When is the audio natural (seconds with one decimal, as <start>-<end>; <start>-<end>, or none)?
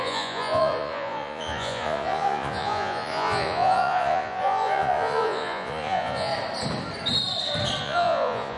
6.3-7.8